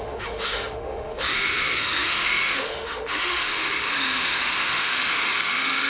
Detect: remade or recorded remade